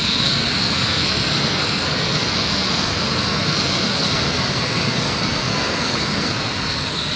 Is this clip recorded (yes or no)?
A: no